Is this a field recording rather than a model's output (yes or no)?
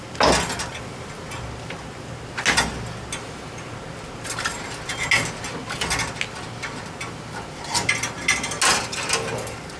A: yes